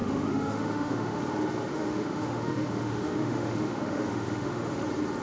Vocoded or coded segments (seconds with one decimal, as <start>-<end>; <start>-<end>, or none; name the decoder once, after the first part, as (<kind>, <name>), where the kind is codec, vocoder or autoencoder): 0.0-1.2 (autoencoder, DAC-VAE); 1.7-4.8